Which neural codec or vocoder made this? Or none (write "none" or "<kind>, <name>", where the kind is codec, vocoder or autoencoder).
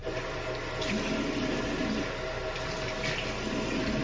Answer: none